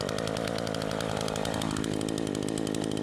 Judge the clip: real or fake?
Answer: real